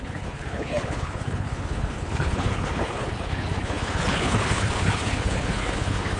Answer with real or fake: fake